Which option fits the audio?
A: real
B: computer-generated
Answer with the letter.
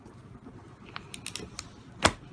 A